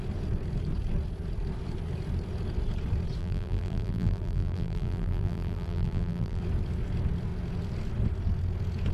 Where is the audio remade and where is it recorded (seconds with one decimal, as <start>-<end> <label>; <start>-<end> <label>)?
0.0-3.2 recorded; 3.2-6.4 remade; 6.4-8.9 recorded